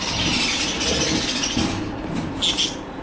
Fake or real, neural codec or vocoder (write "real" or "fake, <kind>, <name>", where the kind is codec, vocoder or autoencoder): real